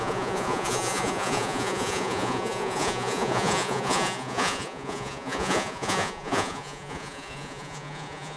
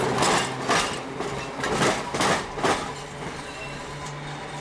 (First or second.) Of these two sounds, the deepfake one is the first